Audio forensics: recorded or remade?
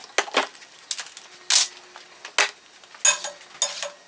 recorded